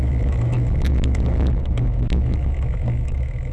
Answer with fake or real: fake